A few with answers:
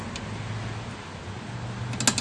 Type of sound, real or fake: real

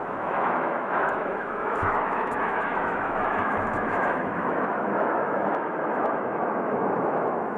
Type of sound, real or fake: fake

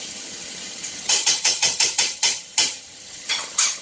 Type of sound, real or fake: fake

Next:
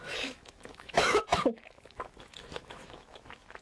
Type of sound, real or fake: fake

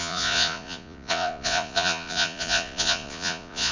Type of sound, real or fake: fake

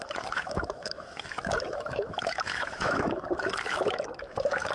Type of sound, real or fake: fake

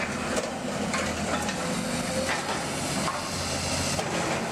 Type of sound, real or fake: real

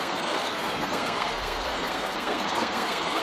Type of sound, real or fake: fake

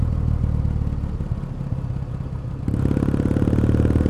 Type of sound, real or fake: real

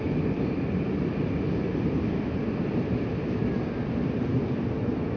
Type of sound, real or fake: real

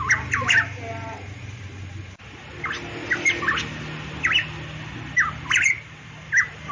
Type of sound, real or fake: real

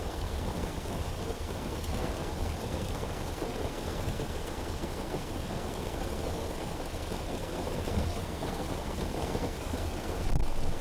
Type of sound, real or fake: fake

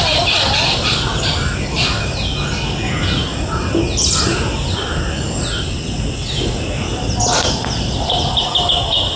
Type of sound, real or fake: real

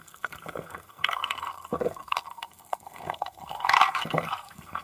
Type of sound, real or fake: fake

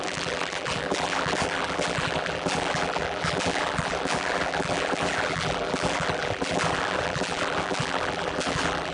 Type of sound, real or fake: fake